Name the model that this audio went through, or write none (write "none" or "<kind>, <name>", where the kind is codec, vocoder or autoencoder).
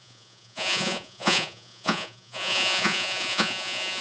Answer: vocoder, Vocos